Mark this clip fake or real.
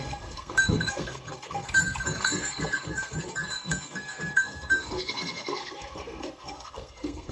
fake